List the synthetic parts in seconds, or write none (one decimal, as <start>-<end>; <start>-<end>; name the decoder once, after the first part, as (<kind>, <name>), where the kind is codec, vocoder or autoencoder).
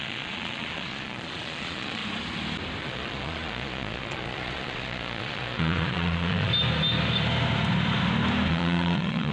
0.0-2.0 (vocoder, Vocos); 2.8-6.5; 8.5-9.3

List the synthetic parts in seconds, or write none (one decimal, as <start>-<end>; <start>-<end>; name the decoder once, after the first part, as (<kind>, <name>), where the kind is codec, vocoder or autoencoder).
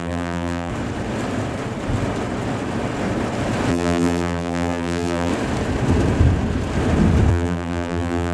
0.0-0.7 (vocoder, BigVGAN v2); 3.7-5.3; 7.3-8.3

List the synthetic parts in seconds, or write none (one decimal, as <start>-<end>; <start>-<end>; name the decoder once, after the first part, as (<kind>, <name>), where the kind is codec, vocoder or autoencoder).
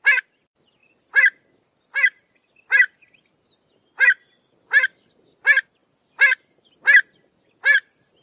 none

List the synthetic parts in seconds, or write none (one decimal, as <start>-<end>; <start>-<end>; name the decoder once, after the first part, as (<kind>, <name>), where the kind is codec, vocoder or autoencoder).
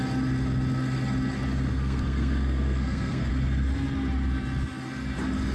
1.7-3.3 (codec, SNAC)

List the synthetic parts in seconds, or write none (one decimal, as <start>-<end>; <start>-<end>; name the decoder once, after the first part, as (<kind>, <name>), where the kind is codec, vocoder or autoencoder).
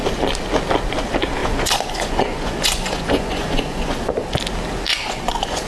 1.4-4.3 (vocoder, Vocos); 4.9-5.7